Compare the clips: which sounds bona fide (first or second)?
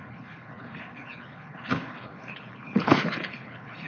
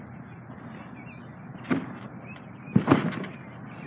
second